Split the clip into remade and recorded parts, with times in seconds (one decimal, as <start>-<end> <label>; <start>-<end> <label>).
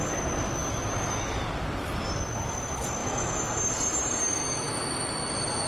0.0-0.6 recorded; 0.6-1.2 remade; 1.2-3.0 recorded; 3.0-3.6 remade; 3.6-4.4 recorded; 4.4-5.3 remade; 5.3-5.7 recorded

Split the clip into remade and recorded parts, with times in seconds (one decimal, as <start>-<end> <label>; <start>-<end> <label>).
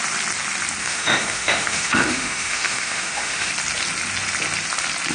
0.0-0.8 recorded; 0.8-3.5 remade; 3.5-5.1 recorded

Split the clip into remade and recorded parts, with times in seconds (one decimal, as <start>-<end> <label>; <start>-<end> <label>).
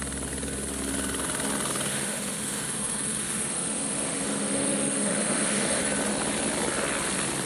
0.0-1.9 recorded; 1.9-5.8 remade; 5.8-7.5 recorded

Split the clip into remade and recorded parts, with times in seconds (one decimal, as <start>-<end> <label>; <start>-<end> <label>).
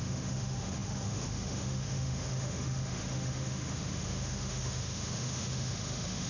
0.0-6.3 remade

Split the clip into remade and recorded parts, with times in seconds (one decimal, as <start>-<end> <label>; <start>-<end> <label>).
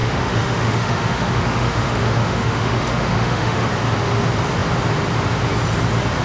0.0-3.7 remade; 3.7-6.2 recorded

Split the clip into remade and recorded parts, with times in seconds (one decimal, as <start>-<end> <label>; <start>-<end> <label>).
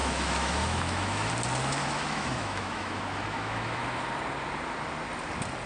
0.0-1.3 remade; 1.3-1.8 recorded; 1.8-4.0 remade; 4.0-5.7 recorded